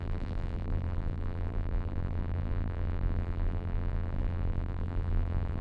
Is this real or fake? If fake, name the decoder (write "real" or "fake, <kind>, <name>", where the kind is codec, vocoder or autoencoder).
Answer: fake, vocoder, BigVGAN v2